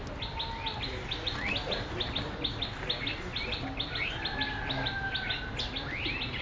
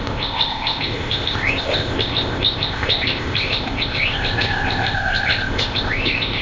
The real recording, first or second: first